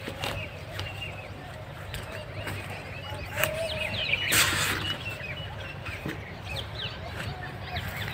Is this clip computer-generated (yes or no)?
yes